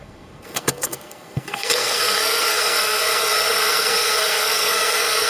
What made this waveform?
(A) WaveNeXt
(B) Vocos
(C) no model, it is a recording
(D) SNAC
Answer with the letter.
D